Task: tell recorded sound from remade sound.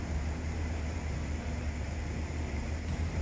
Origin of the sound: remade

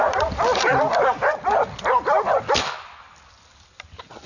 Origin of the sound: recorded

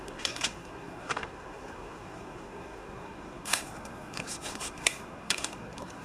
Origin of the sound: remade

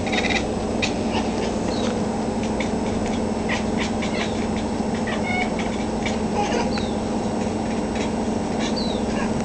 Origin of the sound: recorded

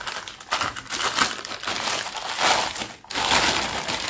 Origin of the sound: recorded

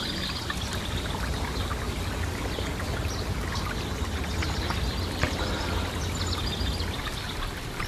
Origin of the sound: recorded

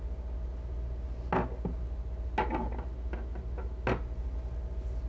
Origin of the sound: recorded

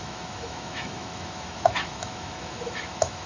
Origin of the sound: remade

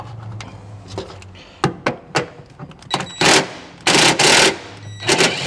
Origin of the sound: recorded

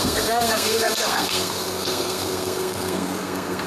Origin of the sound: remade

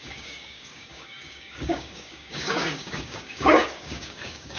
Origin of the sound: remade